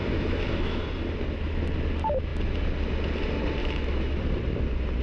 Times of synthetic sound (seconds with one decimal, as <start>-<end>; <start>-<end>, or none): 0.0-0.8; 3.6-4.2